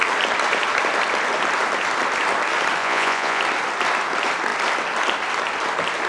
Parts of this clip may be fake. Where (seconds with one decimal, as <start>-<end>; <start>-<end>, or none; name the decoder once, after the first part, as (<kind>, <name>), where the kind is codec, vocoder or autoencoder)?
2.8-3.4 (vocoder, Vocos)